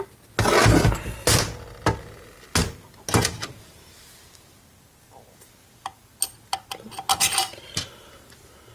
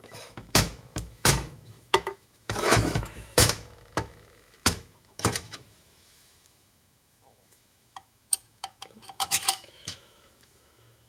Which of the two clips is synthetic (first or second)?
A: second